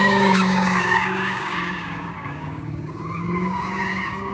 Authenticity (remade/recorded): remade